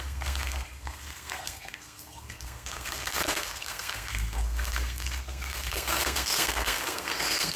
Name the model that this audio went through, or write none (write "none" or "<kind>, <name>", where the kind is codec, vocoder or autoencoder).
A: codec, SNAC